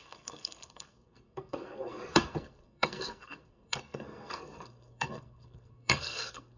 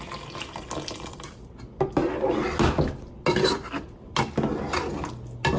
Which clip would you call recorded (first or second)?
second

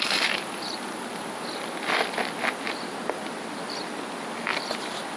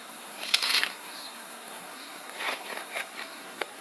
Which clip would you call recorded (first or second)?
first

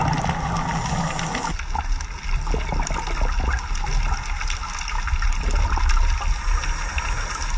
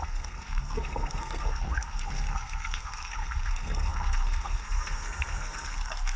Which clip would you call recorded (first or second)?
first